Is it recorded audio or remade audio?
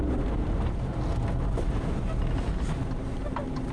recorded